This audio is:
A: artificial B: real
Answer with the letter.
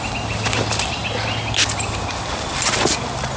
B